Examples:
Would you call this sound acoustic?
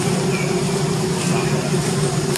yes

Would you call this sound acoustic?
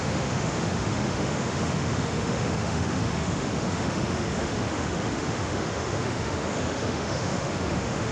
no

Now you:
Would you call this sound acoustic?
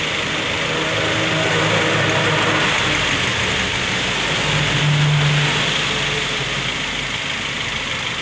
yes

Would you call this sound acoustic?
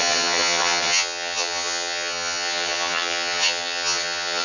no